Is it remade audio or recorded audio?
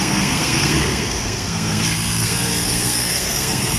remade